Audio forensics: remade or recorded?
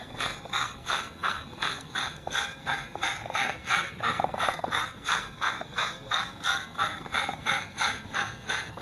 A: remade